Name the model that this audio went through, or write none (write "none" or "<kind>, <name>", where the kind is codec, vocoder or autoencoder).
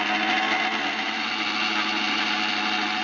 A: none